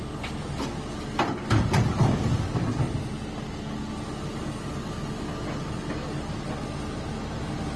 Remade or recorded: recorded